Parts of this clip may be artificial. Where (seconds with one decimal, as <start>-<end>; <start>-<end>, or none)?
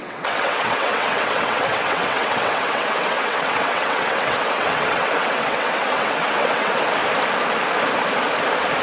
0.0-7.0